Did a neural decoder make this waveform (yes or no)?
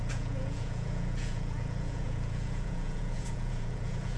yes